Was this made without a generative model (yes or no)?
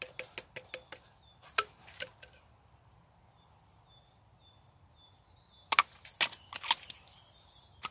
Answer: yes